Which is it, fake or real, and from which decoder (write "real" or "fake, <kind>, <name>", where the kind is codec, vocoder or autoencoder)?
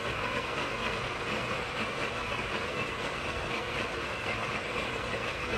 fake, codec, SNAC